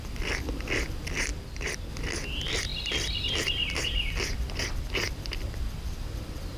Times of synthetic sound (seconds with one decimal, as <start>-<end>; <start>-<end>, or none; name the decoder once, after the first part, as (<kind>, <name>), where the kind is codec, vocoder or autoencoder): none